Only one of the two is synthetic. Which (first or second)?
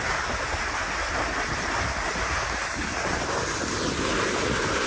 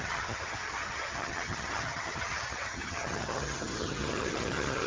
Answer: second